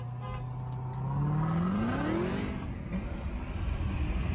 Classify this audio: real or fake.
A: real